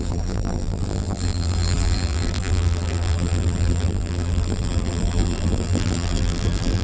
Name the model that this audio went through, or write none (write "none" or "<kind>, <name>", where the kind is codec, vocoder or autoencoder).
vocoder, BigVGAN v2